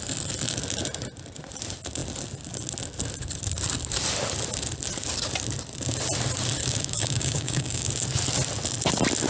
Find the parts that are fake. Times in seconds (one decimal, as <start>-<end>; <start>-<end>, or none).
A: 6.6-7.9